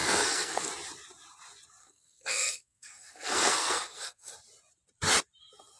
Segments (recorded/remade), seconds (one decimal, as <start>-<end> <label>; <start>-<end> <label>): 0.0-0.7 remade; 0.7-1.8 recorded; 1.8-4.3 remade; 4.3-5.8 recorded